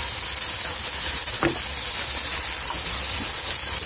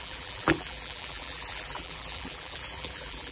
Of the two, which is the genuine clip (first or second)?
first